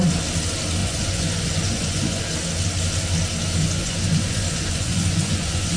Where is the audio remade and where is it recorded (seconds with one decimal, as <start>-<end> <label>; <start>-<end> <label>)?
0.0-0.8 recorded; 0.8-2.2 remade; 2.2-3.6 recorded; 3.6-5.8 remade